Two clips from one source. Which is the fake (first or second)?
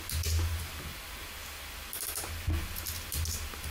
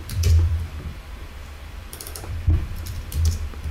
second